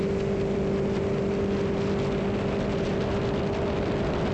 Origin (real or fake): real